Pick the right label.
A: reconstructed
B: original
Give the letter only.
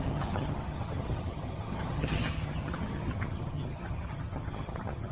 A